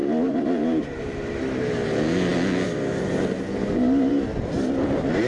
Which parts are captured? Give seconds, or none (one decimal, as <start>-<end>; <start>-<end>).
1.4-5.3